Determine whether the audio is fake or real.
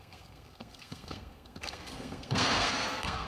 fake